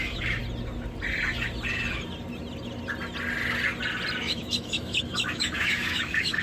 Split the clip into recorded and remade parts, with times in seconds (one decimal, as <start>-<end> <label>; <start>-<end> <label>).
0.0-0.4 remade; 0.4-4.2 recorded; 4.2-6.4 remade